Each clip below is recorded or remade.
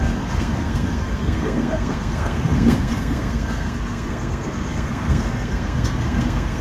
remade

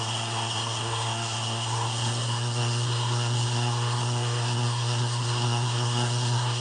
remade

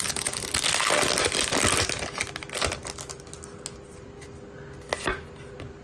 recorded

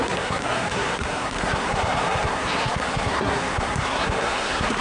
remade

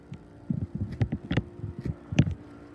remade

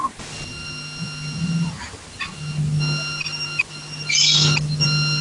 recorded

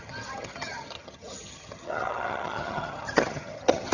remade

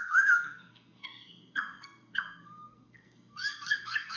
remade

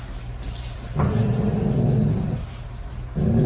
recorded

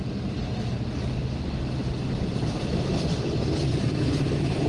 recorded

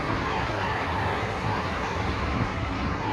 remade